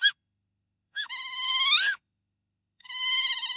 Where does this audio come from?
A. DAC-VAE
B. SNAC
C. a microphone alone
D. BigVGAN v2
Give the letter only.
A